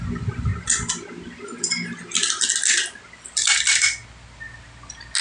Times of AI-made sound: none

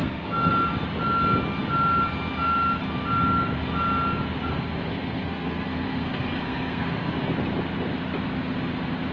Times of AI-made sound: 0.0-0.5 (codec, SNAC); 4.5-7.3

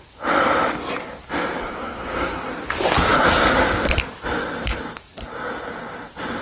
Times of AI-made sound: 1.6-2.5 (codec, SNAC)

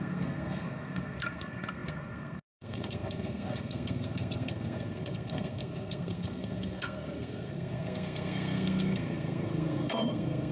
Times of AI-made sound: 0.0-10.5 (codec, SNAC)